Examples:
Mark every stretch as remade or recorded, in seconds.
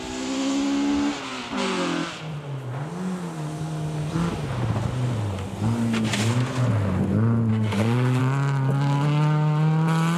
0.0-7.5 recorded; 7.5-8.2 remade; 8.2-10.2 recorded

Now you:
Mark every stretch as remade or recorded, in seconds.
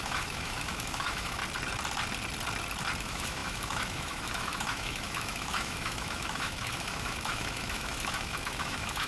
0.0-1.4 remade; 1.4-3.0 recorded; 3.0-9.1 remade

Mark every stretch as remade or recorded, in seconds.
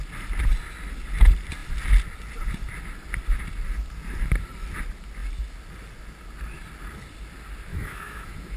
0.0-7.7 recorded; 7.7-8.6 remade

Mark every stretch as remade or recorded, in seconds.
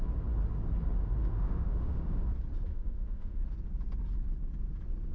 0.0-1.2 recorded; 1.2-2.2 remade; 2.2-2.7 recorded; 2.7-3.4 remade; 3.4-5.1 recorded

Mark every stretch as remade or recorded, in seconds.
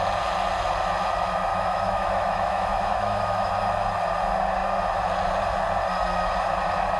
0.0-1.5 recorded; 1.5-3.5 remade; 3.5-7.0 recorded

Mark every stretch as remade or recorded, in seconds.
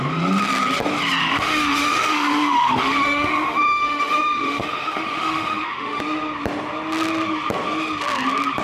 0.0-1.2 recorded; 1.2-6.0 remade; 6.0-8.6 recorded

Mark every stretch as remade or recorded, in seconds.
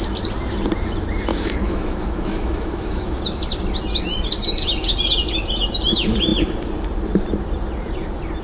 0.0-1.3 recorded; 1.3-3.2 remade; 3.2-8.4 recorded